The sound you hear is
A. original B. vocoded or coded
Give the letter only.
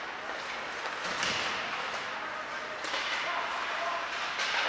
A